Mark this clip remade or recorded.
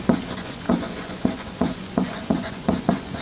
remade